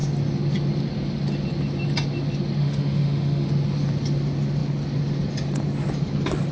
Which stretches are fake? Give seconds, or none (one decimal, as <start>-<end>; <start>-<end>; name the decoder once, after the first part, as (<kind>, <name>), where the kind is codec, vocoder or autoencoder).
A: 2.6-3.5 (autoencoder, DAC-VAE)